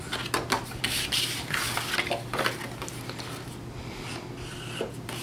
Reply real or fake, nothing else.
real